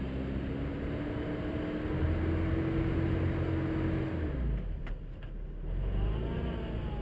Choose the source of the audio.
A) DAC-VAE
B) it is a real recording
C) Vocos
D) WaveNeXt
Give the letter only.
B